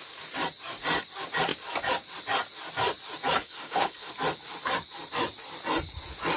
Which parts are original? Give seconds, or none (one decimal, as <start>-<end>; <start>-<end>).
0.0-3.4; 4.1-6.4